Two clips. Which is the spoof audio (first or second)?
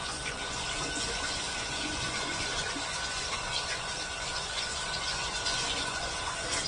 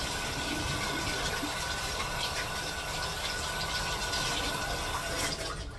first